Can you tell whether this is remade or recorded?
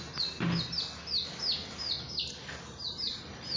recorded